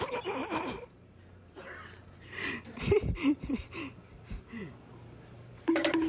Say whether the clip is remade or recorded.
remade